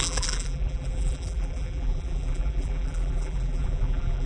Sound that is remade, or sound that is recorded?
remade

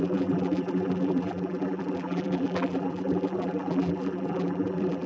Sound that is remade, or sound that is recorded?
remade